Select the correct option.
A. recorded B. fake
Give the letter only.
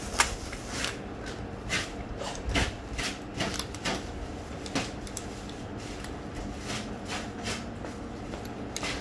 A